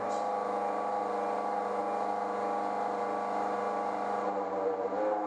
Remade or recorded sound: recorded